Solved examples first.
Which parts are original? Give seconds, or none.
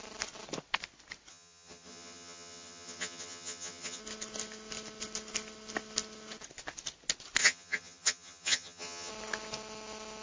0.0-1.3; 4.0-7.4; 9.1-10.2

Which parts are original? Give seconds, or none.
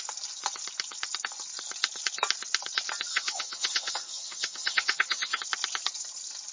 0.0-3.1; 5.4-6.5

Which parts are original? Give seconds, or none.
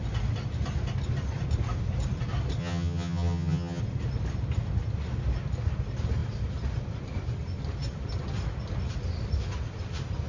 0.0-2.6; 3.8-10.3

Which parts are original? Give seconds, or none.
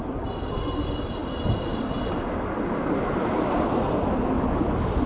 0.0-5.1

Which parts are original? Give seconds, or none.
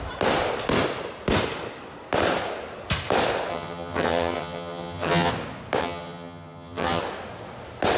0.0-3.5; 5.3-5.8; 7.0-8.0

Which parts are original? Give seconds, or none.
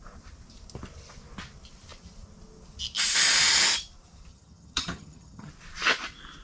0.0-4.3; 5.5-6.4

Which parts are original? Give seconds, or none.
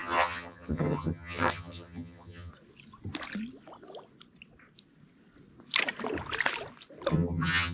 2.5-7.1